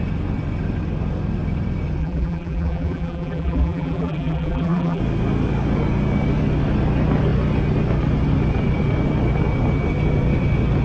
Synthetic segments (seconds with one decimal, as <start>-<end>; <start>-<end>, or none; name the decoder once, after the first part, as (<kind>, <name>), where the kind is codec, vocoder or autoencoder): 2.0-5.0 (vocoder, BigVGAN v2)